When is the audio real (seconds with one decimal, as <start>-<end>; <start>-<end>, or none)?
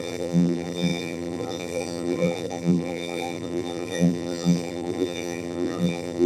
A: none